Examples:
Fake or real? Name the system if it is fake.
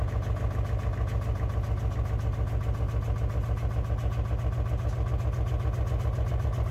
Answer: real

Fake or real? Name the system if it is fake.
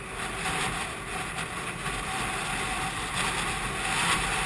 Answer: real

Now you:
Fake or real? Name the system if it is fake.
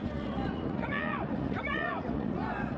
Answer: fake, vocoder, Vocos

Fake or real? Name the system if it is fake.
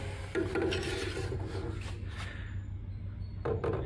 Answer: real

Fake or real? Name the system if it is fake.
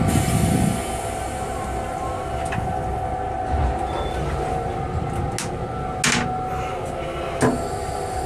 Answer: real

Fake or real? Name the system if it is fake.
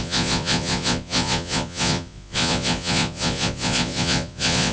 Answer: fake, vocoder, Vocos